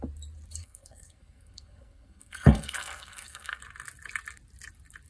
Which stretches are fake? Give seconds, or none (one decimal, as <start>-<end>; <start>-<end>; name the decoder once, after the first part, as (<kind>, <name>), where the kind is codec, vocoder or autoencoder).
0.6-3.6 (codec, SNAC)